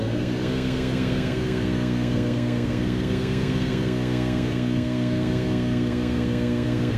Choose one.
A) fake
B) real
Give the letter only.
A